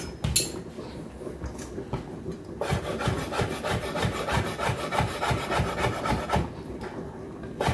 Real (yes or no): yes